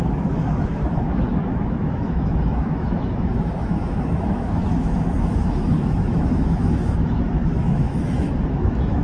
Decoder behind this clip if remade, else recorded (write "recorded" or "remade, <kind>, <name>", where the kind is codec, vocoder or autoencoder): remade, autoencoder, DAC-VAE